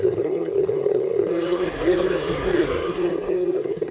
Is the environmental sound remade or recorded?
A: remade